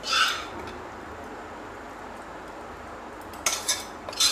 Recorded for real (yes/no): yes